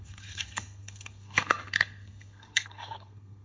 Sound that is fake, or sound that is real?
fake